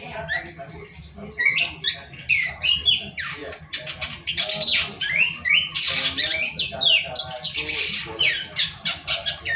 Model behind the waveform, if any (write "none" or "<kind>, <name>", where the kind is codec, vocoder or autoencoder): none